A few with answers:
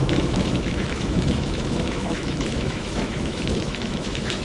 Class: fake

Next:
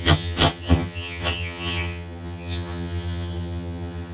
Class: fake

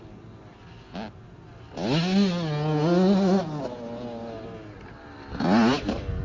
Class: real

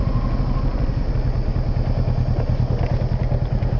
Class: real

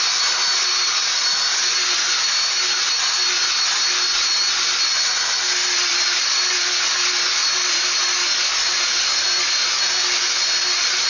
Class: real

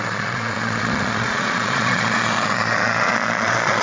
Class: fake